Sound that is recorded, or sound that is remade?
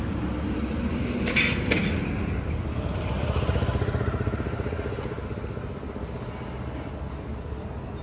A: recorded